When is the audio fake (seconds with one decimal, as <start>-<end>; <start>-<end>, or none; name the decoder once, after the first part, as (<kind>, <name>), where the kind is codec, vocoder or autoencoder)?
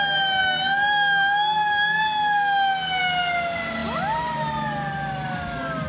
none